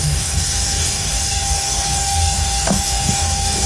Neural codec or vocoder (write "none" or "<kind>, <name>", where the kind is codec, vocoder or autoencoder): codec, DAC